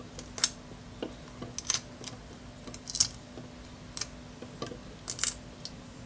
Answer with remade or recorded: recorded